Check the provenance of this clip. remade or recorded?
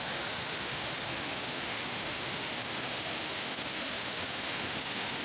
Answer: remade